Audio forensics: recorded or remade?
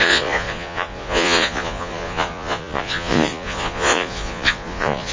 remade